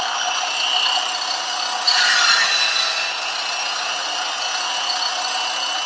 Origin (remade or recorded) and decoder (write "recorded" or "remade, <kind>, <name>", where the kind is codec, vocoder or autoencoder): recorded